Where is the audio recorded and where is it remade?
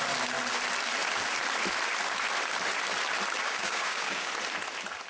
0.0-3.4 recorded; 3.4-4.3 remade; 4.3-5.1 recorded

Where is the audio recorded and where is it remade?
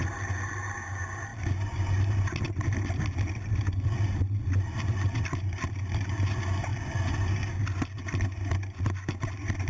0.0-9.7 recorded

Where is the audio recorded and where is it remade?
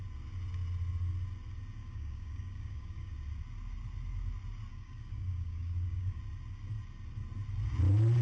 0.0-1.8 recorded; 1.8-3.1 remade; 3.1-4.7 recorded; 4.7-6.2 remade; 6.2-8.2 recorded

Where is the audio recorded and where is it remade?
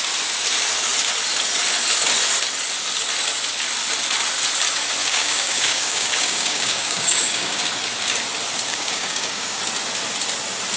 0.0-5.0 recorded; 5.0-7.6 remade; 7.6-8.7 recorded; 8.7-9.6 remade; 9.6-10.8 recorded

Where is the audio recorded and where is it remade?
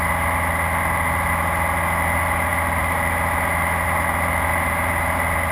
0.0-5.5 recorded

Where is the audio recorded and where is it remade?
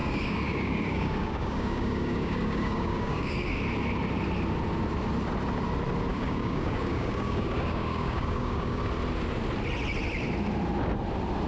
0.0-3.5 remade; 3.5-6.1 recorded; 6.1-8.8 remade; 8.8-11.5 recorded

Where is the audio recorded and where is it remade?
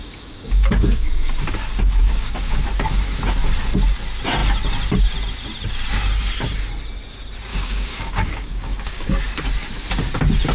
0.0-1.3 remade; 1.3-2.0 recorded; 2.0-2.6 remade; 2.6-7.5 recorded; 7.5-9.1 remade; 9.1-10.5 recorded